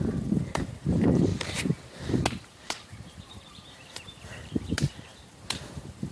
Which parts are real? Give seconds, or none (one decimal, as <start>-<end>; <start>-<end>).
1.3-2.4